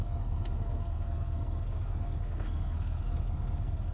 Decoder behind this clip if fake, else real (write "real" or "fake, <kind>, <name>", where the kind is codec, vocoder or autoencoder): fake, codec, SNAC